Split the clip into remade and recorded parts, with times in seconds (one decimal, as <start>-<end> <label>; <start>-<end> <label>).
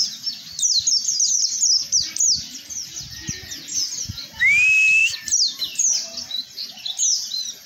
0.0-7.7 recorded